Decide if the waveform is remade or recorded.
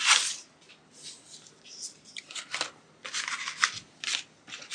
recorded